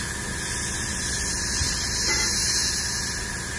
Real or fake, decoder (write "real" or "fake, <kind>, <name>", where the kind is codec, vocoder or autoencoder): real